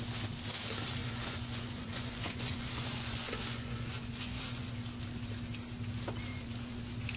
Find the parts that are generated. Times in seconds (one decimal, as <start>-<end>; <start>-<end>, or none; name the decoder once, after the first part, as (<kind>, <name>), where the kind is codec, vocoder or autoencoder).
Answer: 1.0-4.7 (vocoder, Vocos); 6.3-6.8